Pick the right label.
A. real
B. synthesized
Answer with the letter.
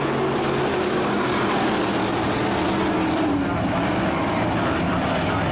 A